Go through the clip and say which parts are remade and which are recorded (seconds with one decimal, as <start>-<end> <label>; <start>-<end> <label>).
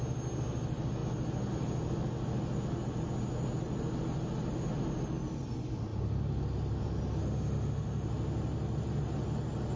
0.0-7.2 recorded; 7.2-8.1 remade; 8.1-9.8 recorded